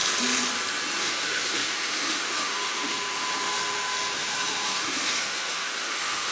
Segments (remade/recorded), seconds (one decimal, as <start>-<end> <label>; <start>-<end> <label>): 0.0-1.0 recorded; 1.0-6.3 remade